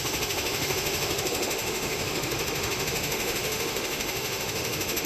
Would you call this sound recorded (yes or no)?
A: no